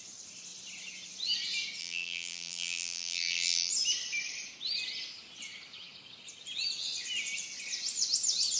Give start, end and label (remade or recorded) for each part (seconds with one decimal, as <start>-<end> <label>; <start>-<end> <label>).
0.0-1.8 recorded; 1.8-3.7 remade; 3.7-8.6 recorded